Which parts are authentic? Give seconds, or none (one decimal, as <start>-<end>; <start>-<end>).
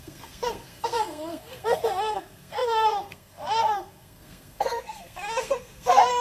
none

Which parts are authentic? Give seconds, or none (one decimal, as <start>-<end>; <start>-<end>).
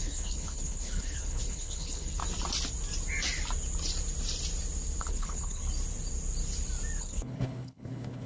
2.2-5.0; 5.6-7.0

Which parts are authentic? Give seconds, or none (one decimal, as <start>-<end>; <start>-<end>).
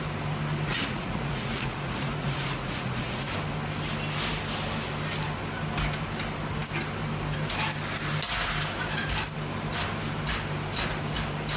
0.0-0.7; 3.3-11.6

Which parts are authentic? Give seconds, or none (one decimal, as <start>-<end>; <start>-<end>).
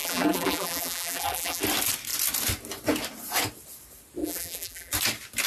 1.6-4.2; 4.9-5.5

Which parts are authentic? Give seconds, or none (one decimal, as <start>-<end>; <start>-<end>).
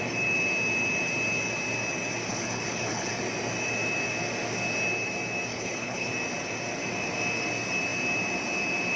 0.0-2.3; 3.2-5.5; 6.1-9.0